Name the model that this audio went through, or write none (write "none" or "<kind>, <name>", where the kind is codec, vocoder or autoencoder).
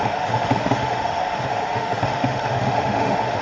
autoencoder, DAC-VAE